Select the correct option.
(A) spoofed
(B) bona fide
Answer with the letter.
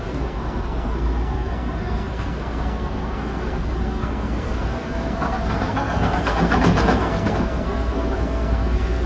A